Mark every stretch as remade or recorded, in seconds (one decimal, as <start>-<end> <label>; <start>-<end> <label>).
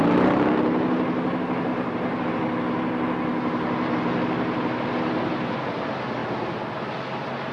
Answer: 0.0-1.7 recorded; 1.7-2.3 remade; 2.3-7.5 recorded